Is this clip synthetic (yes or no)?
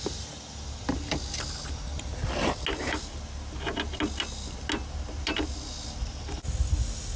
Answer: no